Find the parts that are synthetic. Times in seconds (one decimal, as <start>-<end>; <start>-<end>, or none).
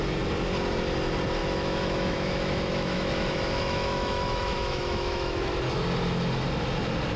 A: 1.4-5.5